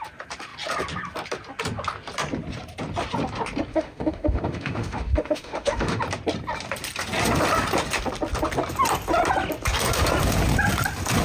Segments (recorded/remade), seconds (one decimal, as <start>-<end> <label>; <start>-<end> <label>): 0.0-3.7 recorded; 3.7-6.0 remade; 6.0-11.2 recorded